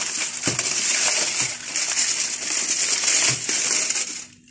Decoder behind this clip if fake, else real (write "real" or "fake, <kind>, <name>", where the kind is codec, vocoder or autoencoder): real